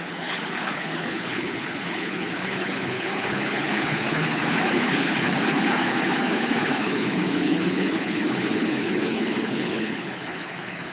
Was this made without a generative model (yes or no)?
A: no